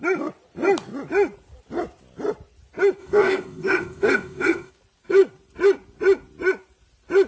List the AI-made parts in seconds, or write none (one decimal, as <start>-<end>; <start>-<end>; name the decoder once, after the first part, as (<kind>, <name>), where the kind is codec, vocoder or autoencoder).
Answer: 3.0-4.7 (codec, ZipCodec)